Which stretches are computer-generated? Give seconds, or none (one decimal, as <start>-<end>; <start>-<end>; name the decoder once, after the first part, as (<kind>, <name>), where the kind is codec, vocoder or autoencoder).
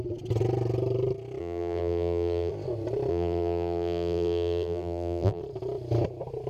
1.4-2.5 (vocoder, BigVGAN v2); 3.1-5.4